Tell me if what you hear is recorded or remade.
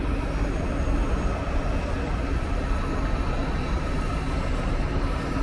recorded